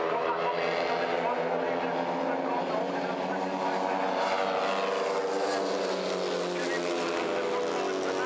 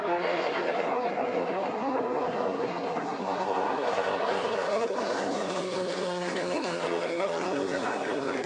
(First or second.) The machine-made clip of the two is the second